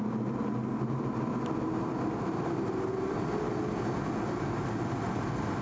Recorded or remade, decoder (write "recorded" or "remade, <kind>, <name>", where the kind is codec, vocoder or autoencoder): recorded